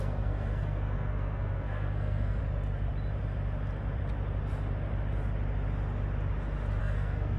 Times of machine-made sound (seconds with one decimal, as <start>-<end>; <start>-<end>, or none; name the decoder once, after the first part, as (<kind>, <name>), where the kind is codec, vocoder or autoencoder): 0.0-2.4 (codec, SNAC); 6.8-7.4